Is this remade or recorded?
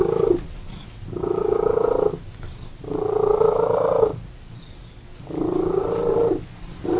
recorded